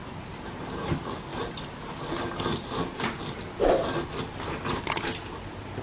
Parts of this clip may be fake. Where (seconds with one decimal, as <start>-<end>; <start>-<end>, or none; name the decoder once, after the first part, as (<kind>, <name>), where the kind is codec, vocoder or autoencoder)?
none